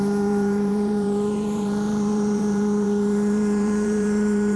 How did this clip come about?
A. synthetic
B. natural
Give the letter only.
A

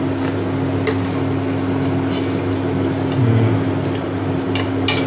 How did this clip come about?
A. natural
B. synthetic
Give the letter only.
A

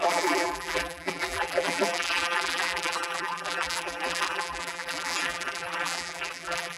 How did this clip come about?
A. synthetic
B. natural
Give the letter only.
A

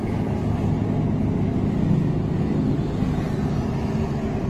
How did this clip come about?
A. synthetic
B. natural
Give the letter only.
B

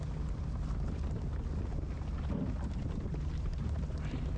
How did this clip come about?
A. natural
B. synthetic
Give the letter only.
A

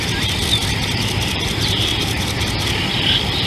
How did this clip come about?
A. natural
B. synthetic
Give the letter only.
B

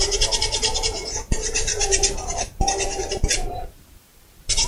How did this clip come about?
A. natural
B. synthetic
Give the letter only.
B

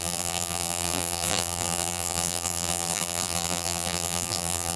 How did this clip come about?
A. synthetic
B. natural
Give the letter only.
A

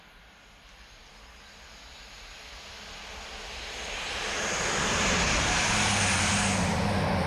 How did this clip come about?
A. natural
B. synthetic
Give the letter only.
A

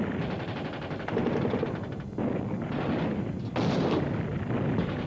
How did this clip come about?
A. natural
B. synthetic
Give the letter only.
A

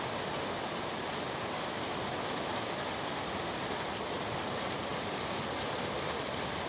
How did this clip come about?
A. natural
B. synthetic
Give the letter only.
A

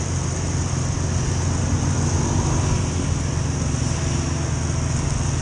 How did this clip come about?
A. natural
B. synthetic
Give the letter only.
A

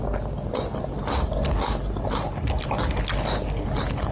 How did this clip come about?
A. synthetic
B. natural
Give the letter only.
B